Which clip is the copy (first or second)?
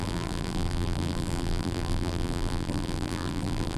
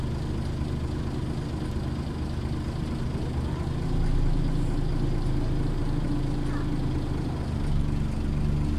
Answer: first